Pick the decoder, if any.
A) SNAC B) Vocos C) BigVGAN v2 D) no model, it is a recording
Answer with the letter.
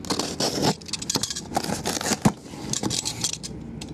D